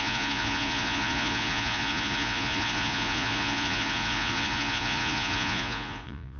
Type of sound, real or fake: fake